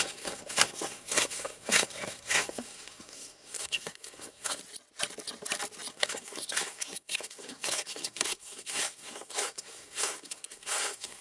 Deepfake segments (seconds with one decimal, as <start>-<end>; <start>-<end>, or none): 0.0-4.6; 5.9-11.2

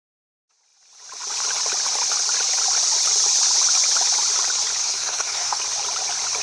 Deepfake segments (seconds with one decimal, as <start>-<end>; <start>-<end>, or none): 4.8-5.6

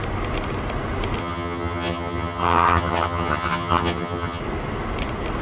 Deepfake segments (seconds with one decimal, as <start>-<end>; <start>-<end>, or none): 1.2-4.4

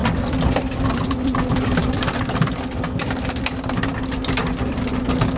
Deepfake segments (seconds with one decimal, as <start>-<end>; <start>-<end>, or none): 0.0-2.2; 3.0-3.9; 4.4-5.0

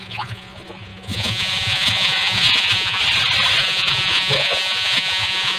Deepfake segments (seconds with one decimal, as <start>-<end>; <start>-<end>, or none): 0.0-3.0; 3.6-5.6

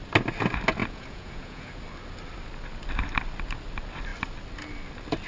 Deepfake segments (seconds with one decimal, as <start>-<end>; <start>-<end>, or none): 0.8-1.8

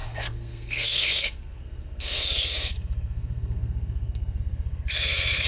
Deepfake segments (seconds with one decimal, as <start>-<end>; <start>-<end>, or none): 0.0-5.5

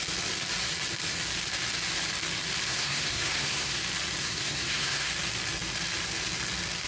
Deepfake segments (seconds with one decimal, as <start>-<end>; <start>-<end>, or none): 2.7-3.8; 4.2-5.1